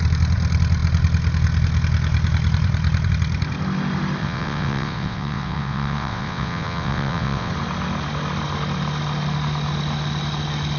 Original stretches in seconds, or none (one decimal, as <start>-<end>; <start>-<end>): 0.0-4.2; 7.5-10.8